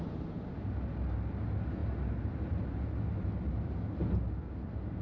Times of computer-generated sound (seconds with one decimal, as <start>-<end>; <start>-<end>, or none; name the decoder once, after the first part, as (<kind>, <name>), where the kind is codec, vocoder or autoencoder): none